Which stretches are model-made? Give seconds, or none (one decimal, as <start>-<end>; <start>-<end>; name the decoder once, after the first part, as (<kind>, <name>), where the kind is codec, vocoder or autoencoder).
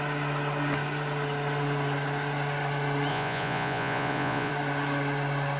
3.1-4.5 (vocoder, Vocos)